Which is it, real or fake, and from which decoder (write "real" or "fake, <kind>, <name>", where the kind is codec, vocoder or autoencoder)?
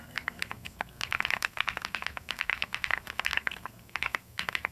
fake, codec, SNAC